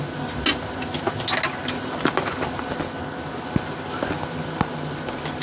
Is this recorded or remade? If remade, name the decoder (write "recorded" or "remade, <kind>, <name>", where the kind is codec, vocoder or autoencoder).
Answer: recorded